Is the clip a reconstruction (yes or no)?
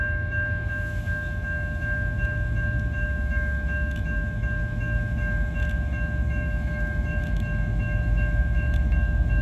yes